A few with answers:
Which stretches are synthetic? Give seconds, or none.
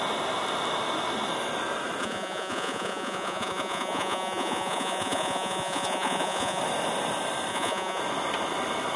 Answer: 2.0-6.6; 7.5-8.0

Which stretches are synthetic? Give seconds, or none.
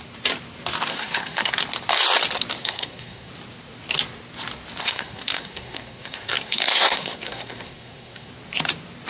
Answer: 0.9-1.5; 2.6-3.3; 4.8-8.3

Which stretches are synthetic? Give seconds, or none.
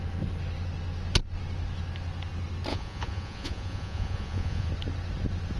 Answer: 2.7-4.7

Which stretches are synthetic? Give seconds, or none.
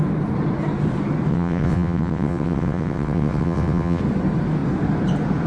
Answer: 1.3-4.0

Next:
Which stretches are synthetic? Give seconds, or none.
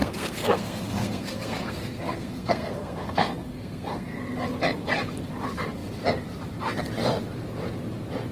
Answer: 0.0-4.2